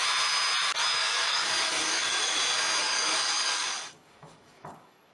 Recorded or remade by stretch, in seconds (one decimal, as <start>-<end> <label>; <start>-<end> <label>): 0.0-1.0 recorded; 1.0-2.4 remade; 2.4-2.8 recorded; 2.8-5.1 remade

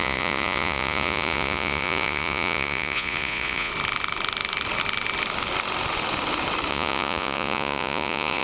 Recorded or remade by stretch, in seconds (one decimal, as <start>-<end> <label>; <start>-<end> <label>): 0.0-3.7 remade; 3.7-6.7 recorded; 6.7-8.4 remade

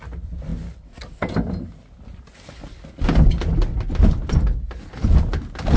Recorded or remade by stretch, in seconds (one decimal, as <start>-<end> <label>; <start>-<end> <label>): 0.0-5.8 recorded

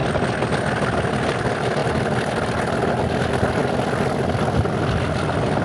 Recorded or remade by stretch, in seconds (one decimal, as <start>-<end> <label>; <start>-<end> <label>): 0.0-5.6 recorded

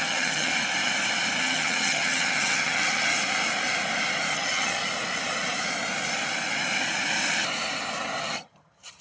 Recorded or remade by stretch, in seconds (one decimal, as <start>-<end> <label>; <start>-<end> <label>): 0.0-0.5 remade; 0.5-1.4 recorded; 1.4-3.1 remade; 3.1-4.3 recorded; 4.3-4.8 remade; 4.8-8.2 recorded; 8.2-9.0 remade

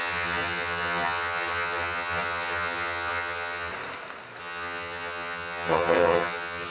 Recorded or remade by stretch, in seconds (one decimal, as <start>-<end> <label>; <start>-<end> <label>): 0.0-3.7 remade; 3.7-4.4 recorded; 4.4-6.7 remade

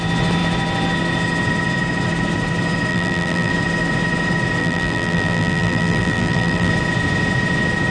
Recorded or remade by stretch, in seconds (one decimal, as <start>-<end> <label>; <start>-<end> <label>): 0.0-2.9 recorded; 2.9-3.5 remade; 3.5-4.6 recorded; 4.6-6.7 remade; 6.7-7.9 recorded